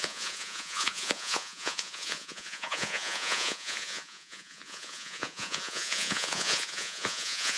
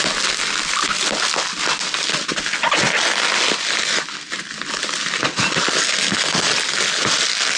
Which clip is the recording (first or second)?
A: second